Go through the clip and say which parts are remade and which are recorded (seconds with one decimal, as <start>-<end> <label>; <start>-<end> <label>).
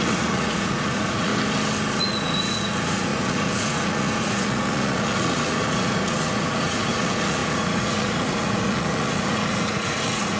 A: 0.0-1.3 remade; 1.3-2.0 recorded; 2.0-10.4 remade